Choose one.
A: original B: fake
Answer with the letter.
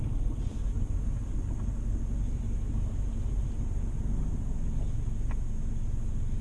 A